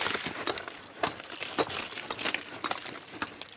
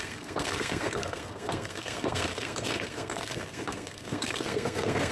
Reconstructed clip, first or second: second